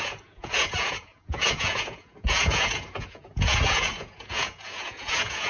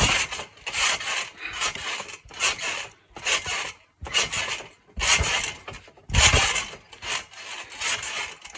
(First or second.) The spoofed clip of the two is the first